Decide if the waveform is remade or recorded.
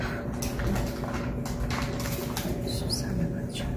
recorded